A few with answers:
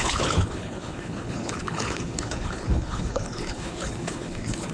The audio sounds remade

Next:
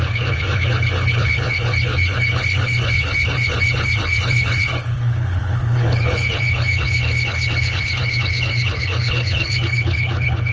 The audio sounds remade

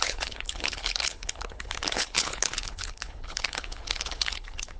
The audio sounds remade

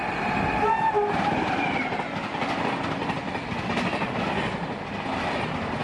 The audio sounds recorded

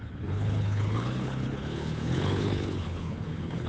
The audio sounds remade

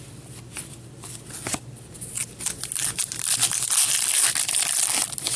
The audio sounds recorded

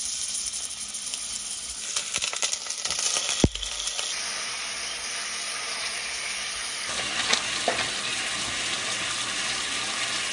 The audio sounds recorded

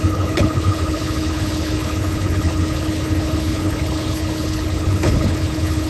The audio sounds remade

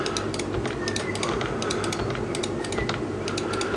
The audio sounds recorded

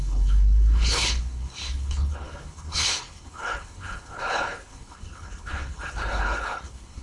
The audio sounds remade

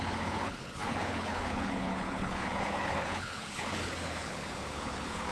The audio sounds remade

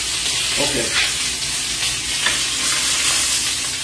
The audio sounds recorded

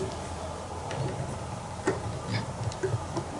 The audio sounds recorded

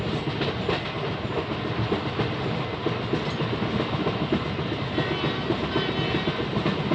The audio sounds recorded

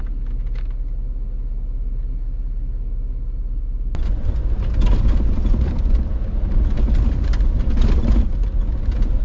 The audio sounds recorded